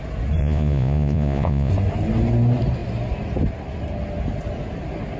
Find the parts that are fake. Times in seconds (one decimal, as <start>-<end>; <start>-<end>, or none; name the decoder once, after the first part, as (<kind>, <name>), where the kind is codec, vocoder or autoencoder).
0.4-1.7 (vocoder, Vocos)